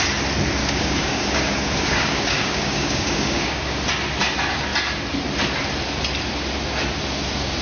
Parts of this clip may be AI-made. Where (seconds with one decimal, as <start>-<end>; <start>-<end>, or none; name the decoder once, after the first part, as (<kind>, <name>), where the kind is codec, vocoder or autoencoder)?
0.6-3.9 (codec, DAC)